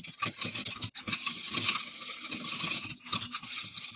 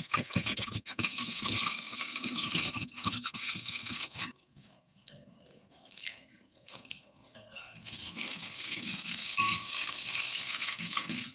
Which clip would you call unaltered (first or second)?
first